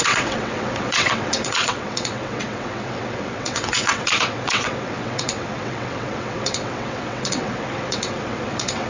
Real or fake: fake